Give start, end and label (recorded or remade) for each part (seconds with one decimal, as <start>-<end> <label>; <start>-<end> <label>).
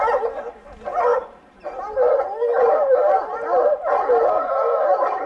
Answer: 0.0-5.3 recorded